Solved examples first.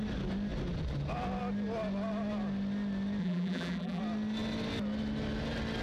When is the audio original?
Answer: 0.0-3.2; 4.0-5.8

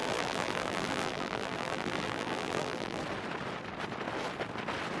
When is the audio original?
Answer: 3.0-5.0

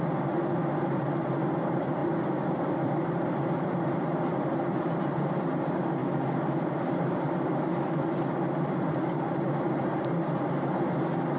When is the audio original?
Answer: 0.0-2.0; 5.6-6.0; 10.5-11.4

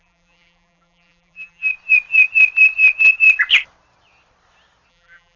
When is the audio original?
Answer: 1.7-4.9

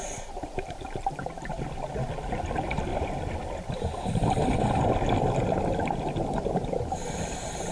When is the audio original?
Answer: 2.9-7.7

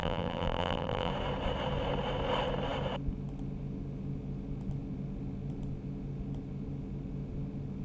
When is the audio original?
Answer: 1.1-7.8